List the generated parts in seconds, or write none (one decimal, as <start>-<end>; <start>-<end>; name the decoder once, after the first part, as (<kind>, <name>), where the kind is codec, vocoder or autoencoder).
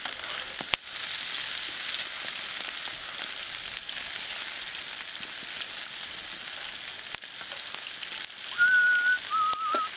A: none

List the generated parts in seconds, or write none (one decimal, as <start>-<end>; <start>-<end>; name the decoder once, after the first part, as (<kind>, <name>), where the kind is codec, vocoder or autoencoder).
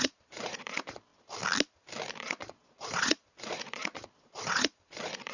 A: 0.0-1.1 (vocoder, Vocos); 2.2-5.3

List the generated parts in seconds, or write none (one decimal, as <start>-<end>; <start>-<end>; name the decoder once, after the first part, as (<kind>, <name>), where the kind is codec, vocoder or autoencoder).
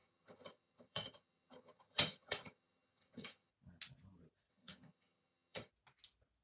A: 0.0-3.5 (vocoder, HiFi-GAN); 4.5-5.7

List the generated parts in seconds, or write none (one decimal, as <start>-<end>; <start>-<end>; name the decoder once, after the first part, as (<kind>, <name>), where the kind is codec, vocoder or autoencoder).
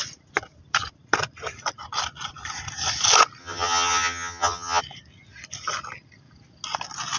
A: 3.4-4.8 (vocoder, HiFi-GAN)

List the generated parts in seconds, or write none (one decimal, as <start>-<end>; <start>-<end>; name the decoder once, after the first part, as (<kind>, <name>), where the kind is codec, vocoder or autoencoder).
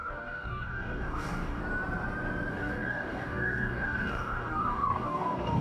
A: 0.0-1.6 (codec, DAC); 2.5-5.6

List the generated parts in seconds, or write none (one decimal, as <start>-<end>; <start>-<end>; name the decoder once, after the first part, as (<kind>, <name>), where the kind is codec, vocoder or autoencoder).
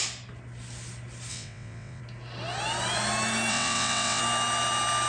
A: 1.3-2.0 (vocoder, WaveNeXt); 3.5-4.2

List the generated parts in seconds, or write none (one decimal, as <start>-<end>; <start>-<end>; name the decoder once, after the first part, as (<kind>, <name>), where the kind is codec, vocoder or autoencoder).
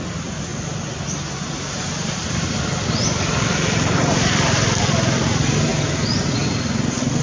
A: 5.7-6.2 (vocoder, BigVGAN v2)